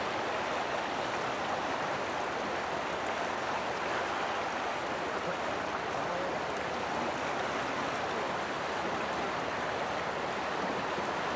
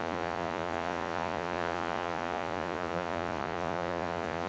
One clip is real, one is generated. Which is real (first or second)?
first